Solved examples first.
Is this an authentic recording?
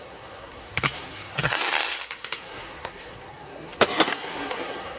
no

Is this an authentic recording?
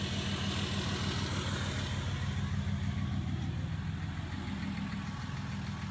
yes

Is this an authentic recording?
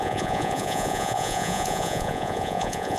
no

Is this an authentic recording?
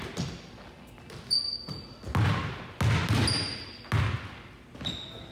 yes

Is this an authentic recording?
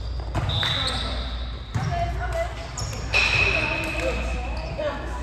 yes